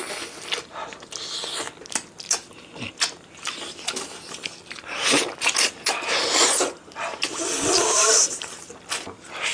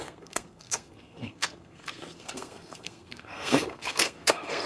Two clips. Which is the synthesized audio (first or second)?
second